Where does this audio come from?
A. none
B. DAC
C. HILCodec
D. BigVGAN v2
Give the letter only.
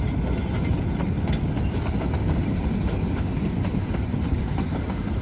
A